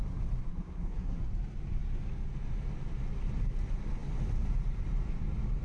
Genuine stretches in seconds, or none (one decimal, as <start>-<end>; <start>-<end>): 0.0-0.5; 1.2-5.6